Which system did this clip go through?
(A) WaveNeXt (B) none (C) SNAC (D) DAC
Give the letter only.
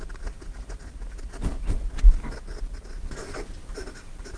B